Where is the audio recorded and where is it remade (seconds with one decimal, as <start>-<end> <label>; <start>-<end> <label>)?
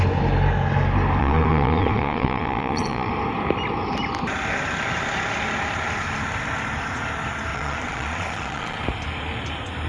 0.0-1.2 recorded; 1.2-3.1 remade; 3.1-7.5 recorded; 7.5-8.8 remade; 8.8-9.9 recorded